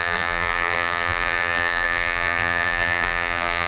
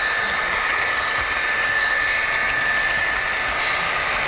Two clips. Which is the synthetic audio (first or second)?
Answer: first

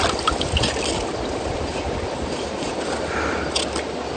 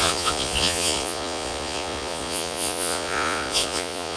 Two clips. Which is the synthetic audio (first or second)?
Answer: second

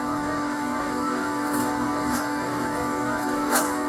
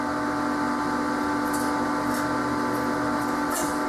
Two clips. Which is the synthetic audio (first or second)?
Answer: first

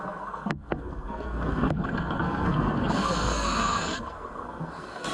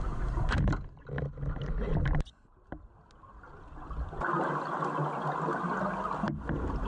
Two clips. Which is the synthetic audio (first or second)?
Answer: first